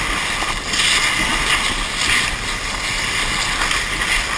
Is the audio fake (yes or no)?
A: no